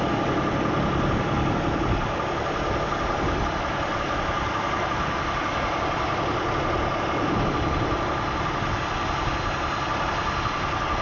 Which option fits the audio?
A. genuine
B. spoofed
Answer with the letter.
A